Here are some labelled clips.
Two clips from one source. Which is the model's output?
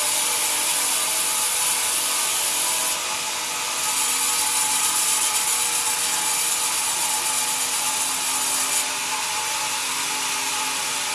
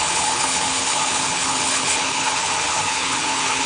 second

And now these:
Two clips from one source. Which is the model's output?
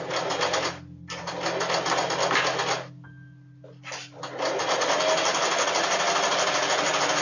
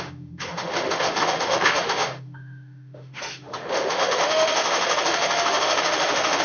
second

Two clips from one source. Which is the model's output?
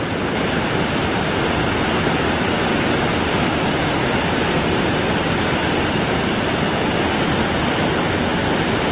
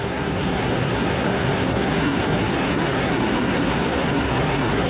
second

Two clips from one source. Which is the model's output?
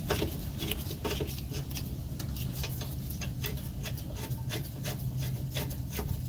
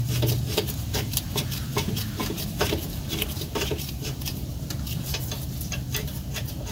second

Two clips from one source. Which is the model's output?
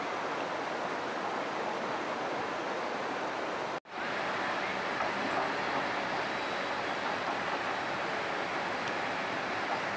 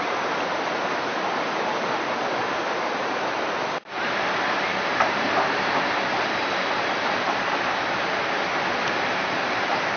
second